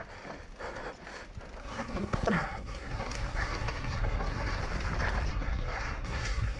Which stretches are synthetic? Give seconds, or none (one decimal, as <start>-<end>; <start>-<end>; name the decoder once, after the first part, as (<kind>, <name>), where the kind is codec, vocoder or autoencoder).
1.6-4.6 (codec, SNAC); 5.3-6.6